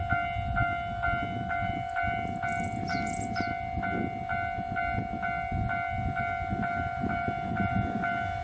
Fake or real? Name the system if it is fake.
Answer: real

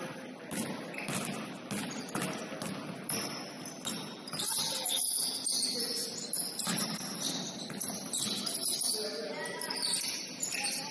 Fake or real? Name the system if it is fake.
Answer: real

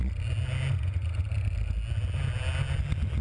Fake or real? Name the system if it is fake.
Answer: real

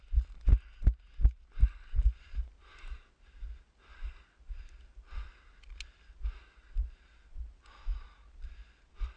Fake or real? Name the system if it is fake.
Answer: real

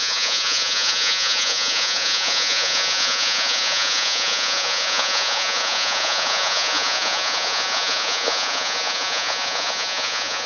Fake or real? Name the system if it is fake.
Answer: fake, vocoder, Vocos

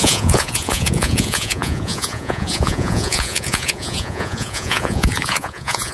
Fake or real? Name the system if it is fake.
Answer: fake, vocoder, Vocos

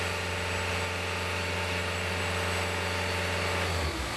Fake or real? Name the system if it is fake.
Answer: real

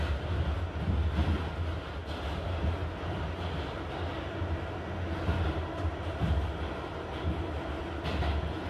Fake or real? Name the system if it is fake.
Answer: real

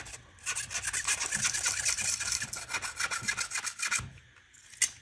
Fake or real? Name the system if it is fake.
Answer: real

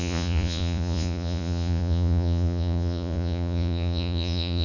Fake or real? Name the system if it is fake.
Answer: fake, vocoder, Vocos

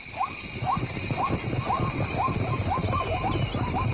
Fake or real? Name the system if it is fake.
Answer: real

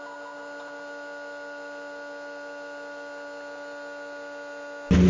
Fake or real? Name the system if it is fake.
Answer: real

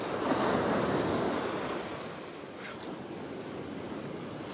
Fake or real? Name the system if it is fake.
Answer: real